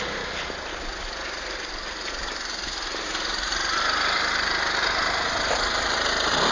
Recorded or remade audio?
remade